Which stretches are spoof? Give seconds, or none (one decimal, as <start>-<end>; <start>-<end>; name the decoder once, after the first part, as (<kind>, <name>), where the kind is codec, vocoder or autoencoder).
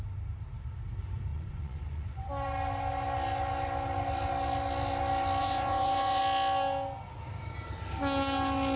1.3-2.3 (vocoder, Vocos); 5.4-6.2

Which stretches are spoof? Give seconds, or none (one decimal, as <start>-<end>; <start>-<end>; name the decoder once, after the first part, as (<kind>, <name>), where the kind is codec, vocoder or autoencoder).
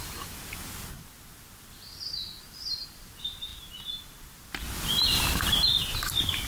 none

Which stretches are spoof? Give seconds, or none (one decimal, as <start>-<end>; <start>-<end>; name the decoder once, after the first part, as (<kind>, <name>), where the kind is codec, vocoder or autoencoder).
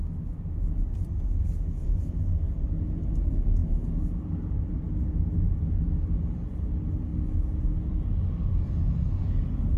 none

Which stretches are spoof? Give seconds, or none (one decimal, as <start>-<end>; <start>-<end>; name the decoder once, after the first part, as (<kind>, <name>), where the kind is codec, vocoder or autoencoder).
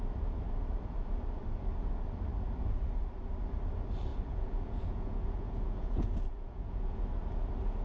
4.1-7.0 (vocoder, Vocos)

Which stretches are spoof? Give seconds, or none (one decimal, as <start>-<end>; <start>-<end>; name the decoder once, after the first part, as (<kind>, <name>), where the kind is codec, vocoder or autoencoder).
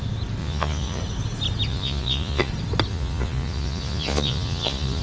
0.4-1.0 (vocoder, Vocos); 1.7-2.5; 2.9-5.0